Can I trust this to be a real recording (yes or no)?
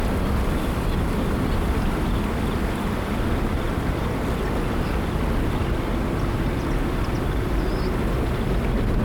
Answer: yes